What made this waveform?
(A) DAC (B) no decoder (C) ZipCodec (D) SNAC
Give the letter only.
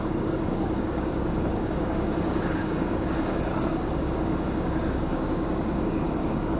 A